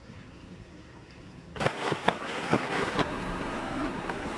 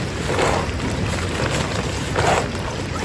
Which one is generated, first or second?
first